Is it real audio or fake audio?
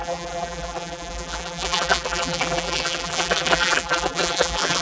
fake